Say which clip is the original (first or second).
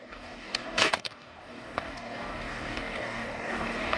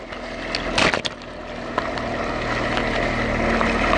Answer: second